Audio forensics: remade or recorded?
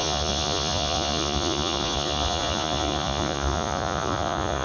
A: remade